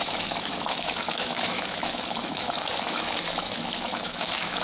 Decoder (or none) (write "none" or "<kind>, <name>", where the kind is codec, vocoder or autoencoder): autoencoder, DAC-VAE